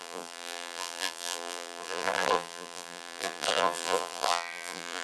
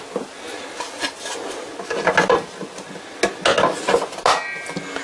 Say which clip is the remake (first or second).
first